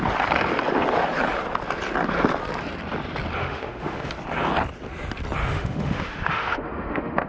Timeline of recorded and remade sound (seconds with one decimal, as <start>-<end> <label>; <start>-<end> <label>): 0.0-3.4 recorded; 3.4-4.1 remade; 4.1-5.4 recorded; 5.4-7.3 remade